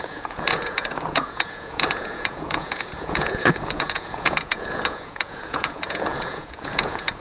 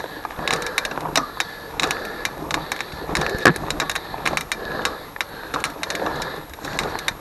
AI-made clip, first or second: first